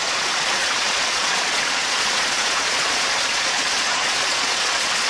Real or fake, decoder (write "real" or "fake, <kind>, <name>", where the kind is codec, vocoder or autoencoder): fake, vocoder, Vocos